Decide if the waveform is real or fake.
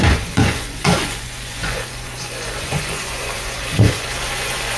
fake